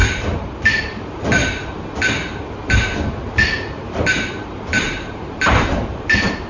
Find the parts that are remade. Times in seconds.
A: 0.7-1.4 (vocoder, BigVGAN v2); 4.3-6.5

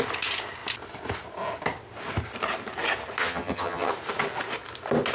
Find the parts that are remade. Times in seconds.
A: 3.2-3.9 (vocoder, HiFi-GAN)

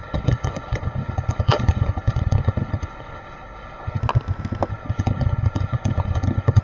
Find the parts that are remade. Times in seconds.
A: 0.0-4.0 (codec, HILCodec); 4.7-6.6

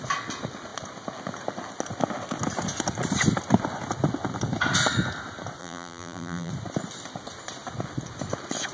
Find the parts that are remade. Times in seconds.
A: 5.6-6.5 (vocoder, BigVGAN v2)

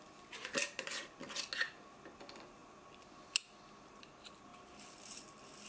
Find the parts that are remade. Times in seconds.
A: none

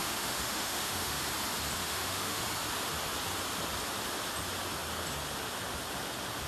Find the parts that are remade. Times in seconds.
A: 0.0-1.2 (autoencoder, DAC-VAE); 1.8-2.4

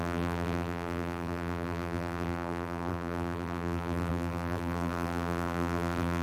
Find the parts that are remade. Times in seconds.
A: 0.0-6.2 (vocoder, BigVGAN v2)

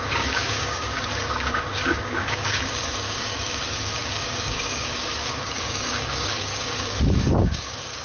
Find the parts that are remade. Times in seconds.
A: 0.0-8.0 (codec, DAC)